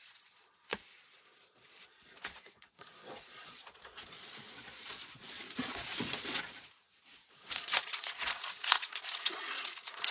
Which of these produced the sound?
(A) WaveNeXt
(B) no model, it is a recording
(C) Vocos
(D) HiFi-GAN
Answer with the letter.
C